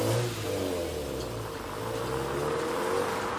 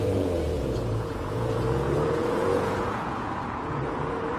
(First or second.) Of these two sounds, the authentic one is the first